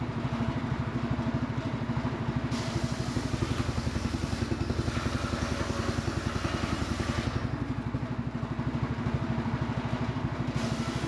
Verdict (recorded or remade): recorded